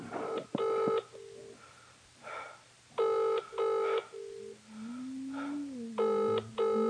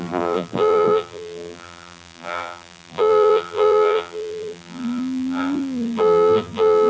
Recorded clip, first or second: first